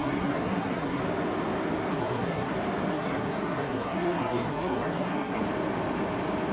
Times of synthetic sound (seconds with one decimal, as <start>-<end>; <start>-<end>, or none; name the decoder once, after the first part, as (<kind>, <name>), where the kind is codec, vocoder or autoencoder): 0.0-1.0 (codec, SNAC); 1.9-2.5; 2.9-5.4